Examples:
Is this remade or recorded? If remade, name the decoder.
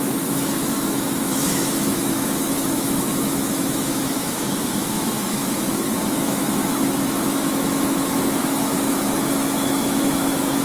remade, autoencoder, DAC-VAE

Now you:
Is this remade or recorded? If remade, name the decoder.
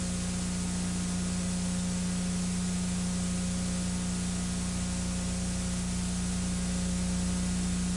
recorded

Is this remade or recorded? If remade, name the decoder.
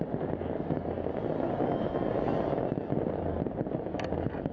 recorded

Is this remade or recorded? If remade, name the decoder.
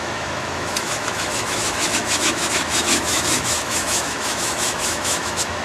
remade, autoencoder, DAC-VAE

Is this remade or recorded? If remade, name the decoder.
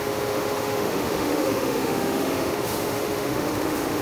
remade, autoencoder, DAC-VAE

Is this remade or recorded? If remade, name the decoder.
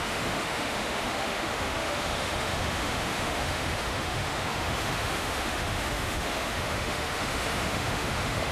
remade, autoencoder, DAC-VAE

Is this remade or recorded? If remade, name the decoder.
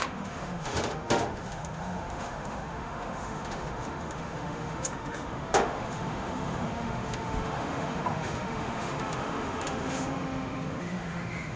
remade, autoencoder, DAC-VAE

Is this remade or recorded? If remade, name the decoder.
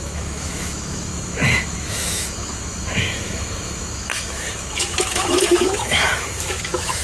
remade, autoencoder, DAC-VAE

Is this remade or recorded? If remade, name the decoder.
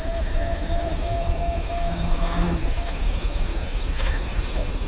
remade, autoencoder, DAC-VAE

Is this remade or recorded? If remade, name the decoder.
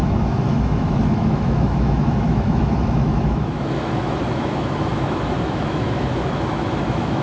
remade, autoencoder, DAC-VAE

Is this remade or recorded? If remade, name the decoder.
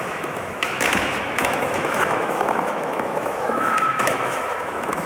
remade, autoencoder, DAC-VAE